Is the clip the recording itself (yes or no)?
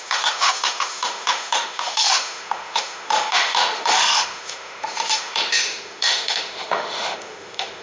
no